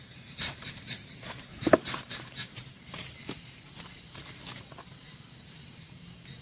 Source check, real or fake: fake